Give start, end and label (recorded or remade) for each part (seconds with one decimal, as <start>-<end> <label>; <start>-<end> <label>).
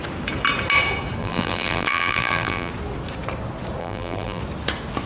0.0-1.2 recorded; 1.2-2.7 remade; 2.7-3.8 recorded; 3.8-4.4 remade; 4.4-5.1 recorded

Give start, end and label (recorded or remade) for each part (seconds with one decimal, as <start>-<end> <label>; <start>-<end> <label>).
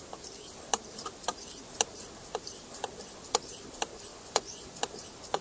0.0-4.1 recorded; 4.1-4.8 remade; 4.8-5.4 recorded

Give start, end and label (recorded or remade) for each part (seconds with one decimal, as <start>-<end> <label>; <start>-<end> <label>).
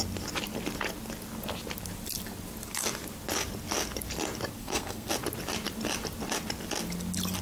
0.0-4.6 recorded; 4.6-5.1 remade; 5.1-7.4 recorded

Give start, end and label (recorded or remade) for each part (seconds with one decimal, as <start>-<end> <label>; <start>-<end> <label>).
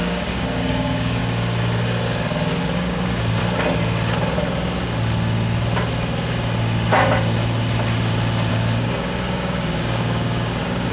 0.0-1.2 remade; 1.2-2.6 recorded; 2.6-3.4 remade; 3.4-8.5 recorded; 8.5-10.9 remade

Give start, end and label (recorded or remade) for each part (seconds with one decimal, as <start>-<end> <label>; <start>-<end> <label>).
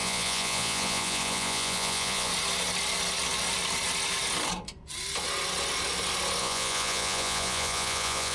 0.0-2.3 remade; 2.3-6.4 recorded; 6.4-8.3 remade